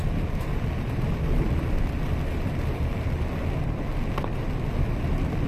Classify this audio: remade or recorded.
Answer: recorded